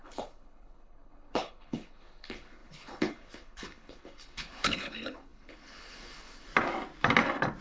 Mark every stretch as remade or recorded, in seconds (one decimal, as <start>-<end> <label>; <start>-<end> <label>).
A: 0.0-6.5 remade; 6.5-7.6 recorded

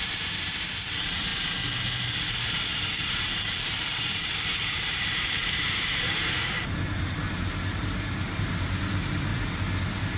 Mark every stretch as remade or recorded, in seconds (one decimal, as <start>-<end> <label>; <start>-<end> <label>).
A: 0.0-9.3 remade; 9.3-10.2 recorded

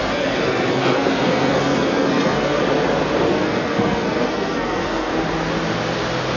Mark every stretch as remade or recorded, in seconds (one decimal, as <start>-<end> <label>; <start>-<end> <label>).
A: 0.0-2.6 remade; 2.6-3.3 recorded; 3.3-5.1 remade; 5.1-6.4 recorded

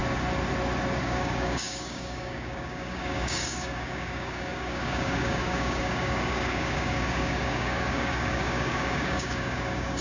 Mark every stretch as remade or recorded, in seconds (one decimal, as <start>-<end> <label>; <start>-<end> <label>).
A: 0.0-1.0 recorded; 1.0-10.0 remade

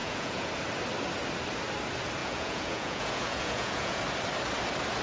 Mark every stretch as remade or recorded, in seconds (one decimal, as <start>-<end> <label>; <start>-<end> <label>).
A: 0.0-0.5 remade; 0.5-2.2 recorded; 2.2-4.0 remade; 4.0-5.0 recorded

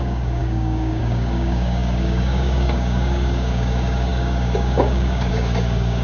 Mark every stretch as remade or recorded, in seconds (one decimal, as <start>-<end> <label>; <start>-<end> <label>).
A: 0.0-6.0 remade

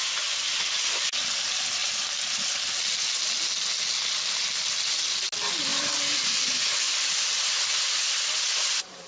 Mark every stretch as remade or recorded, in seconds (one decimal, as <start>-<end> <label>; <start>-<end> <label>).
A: 0.0-5.7 recorded; 5.7-7.1 remade; 7.1-7.7 recorded; 7.7-9.1 remade

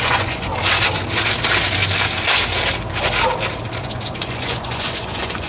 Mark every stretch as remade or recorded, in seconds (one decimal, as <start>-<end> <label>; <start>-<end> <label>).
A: 0.0-0.5 remade; 0.5-3.8 recorded; 3.8-5.5 remade